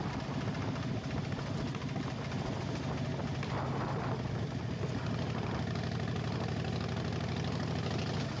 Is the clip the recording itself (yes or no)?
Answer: yes